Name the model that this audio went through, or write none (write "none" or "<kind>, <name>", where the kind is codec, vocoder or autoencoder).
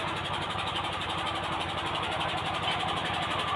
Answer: vocoder, BigVGAN v2